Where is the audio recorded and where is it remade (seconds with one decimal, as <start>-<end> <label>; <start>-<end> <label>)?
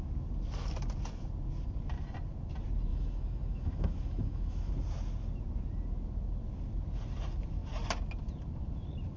0.0-2.9 recorded; 2.9-4.7 remade; 4.7-9.2 recorded